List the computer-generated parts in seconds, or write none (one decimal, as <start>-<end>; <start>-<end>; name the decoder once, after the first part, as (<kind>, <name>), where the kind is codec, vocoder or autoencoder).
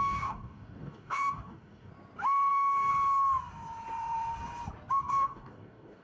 0.0-1.9 (codec, DAC); 2.5-2.9; 5.0-6.0